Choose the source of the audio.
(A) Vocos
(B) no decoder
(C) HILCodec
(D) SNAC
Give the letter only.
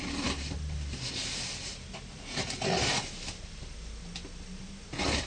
B